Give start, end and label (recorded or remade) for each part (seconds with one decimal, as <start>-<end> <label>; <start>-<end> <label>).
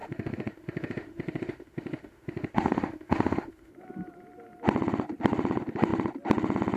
0.0-3.7 remade; 3.7-6.8 recorded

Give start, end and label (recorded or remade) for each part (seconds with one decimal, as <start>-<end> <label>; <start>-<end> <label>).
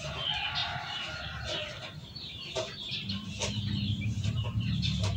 0.0-0.6 recorded; 0.6-1.4 remade; 1.4-2.0 recorded; 2.0-5.2 remade